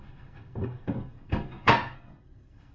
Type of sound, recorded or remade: remade